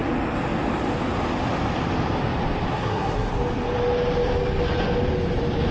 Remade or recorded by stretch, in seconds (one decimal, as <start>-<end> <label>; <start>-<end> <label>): 0.0-2.7 recorded; 2.7-3.3 remade; 3.3-5.7 recorded